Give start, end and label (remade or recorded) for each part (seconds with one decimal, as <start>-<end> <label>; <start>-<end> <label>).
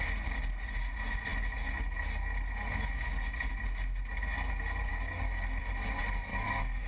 0.0-4.9 recorded; 4.9-5.6 remade; 5.6-6.3 recorded; 6.3-6.9 remade